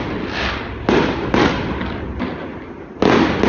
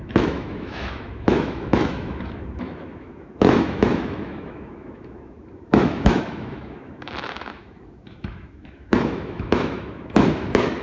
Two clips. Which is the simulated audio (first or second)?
second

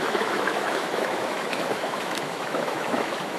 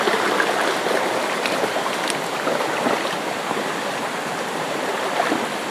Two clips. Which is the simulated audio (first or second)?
first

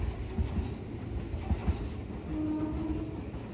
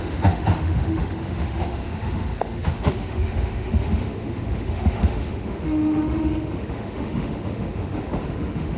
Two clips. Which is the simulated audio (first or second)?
second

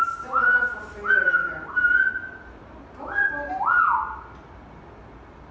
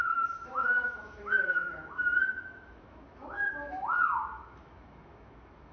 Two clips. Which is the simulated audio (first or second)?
second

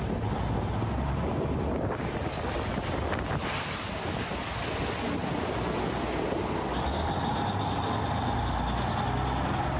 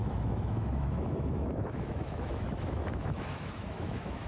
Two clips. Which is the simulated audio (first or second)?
second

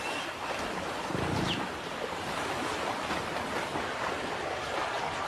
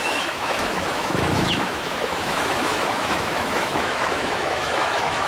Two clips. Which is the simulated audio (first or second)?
second